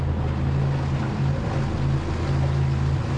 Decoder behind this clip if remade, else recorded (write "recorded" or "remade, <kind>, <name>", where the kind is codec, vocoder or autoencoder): recorded